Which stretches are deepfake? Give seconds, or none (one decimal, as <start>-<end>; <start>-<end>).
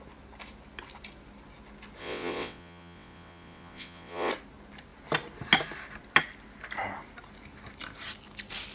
2.0-4.3